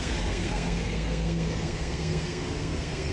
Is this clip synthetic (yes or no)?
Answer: yes